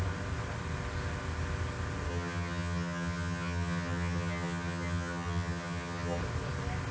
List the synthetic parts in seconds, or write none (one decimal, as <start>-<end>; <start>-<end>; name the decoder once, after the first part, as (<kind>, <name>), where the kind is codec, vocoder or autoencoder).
2.1-6.2 (vocoder, HiFi-GAN)